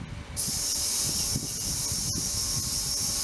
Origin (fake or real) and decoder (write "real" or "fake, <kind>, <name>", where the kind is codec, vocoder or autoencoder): real